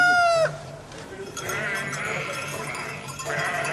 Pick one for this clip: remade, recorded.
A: remade